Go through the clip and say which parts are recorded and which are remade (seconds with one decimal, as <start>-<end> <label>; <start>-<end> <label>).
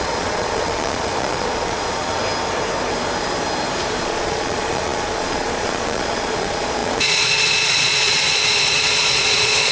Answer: 0.0-2.2 remade; 2.2-4.0 recorded; 4.0-9.7 remade